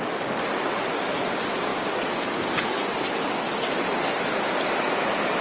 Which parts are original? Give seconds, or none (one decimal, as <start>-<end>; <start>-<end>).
0.0-5.4

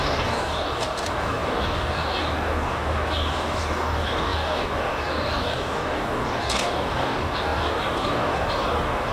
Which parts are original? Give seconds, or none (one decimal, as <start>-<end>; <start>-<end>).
none